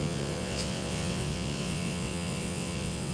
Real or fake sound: fake